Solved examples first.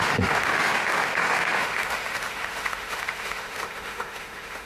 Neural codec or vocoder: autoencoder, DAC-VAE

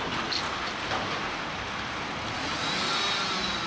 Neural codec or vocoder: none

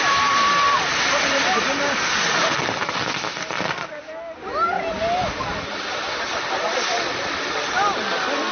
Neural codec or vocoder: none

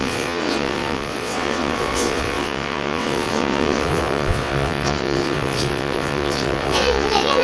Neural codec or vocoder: vocoder, WaveNeXt